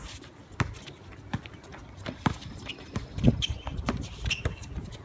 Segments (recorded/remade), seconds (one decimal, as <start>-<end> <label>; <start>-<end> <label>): 0.0-5.0 recorded

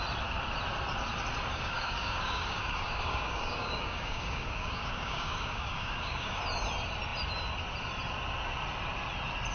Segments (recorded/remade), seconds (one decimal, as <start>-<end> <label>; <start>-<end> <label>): 0.0-1.5 recorded; 1.5-6.4 remade; 6.4-9.5 recorded

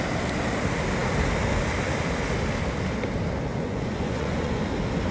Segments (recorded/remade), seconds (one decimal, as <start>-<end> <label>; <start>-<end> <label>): 0.0-3.5 recorded; 3.5-4.6 remade; 4.6-5.1 recorded

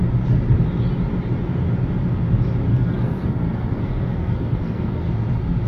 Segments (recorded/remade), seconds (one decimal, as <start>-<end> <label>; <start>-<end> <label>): 0.0-2.7 recorded; 2.7-5.1 remade; 5.1-5.7 recorded

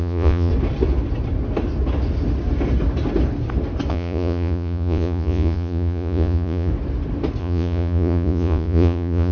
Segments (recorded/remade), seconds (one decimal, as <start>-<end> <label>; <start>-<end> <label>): 0.0-0.5 remade; 0.5-3.9 recorded; 3.9-6.7 remade; 6.7-7.4 recorded; 7.4-9.3 remade

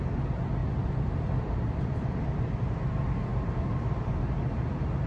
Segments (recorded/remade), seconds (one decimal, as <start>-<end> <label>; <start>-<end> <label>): 0.0-0.6 recorded; 0.6-2.4 remade; 2.4-3.3 recorded; 3.3-4.1 remade; 4.1-5.1 recorded

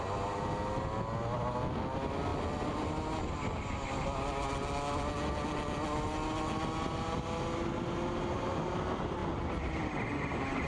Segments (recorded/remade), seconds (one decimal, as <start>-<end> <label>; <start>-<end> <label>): 0.0-10.7 recorded